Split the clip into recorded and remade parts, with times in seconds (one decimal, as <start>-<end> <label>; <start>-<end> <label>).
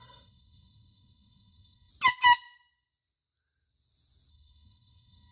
0.0-1.9 remade; 1.9-4.3 recorded; 4.3-5.3 remade